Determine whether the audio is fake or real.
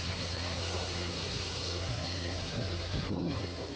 fake